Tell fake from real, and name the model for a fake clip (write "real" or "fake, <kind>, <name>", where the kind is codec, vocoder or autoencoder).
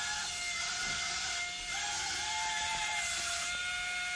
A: real